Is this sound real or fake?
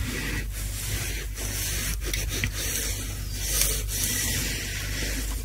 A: real